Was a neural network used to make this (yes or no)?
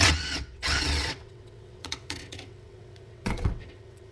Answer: yes